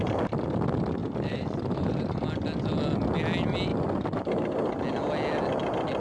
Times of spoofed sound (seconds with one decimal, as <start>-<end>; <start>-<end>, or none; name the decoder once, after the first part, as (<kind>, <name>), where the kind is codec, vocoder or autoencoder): 1.0-1.9 (vocoder, BigVGAN v2); 3.7-4.8